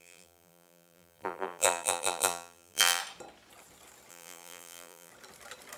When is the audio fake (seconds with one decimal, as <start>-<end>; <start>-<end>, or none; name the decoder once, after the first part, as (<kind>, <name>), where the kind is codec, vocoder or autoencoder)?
0.0-3.0 (vocoder, BigVGAN v2); 4.1-5.1